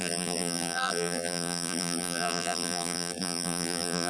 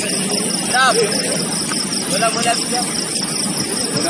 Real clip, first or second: second